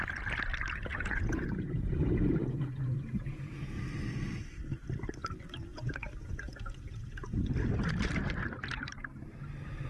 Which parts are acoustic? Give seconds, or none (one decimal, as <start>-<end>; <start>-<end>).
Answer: 0.0-0.9; 3.8-5.7; 7.5-9.9